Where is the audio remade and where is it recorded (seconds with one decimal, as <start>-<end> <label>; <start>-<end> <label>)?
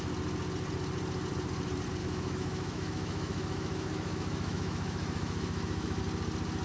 0.0-2.0 recorded; 2.0-6.0 remade; 6.0-6.6 recorded